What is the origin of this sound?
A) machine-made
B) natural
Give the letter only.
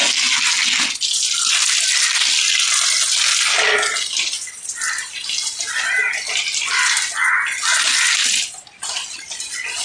B